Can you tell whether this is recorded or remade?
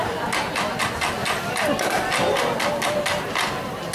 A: recorded